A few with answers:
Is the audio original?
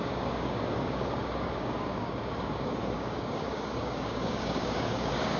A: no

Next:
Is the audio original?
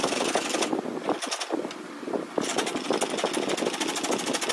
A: yes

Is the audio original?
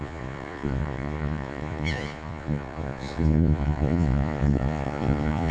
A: no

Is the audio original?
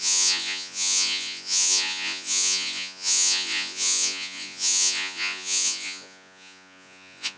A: no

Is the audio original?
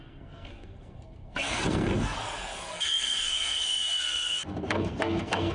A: no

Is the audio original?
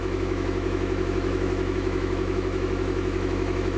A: no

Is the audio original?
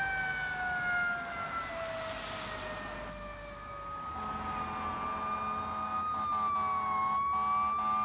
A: yes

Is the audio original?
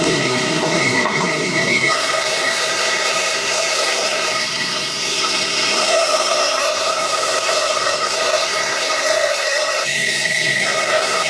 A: no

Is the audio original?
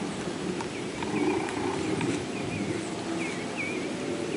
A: yes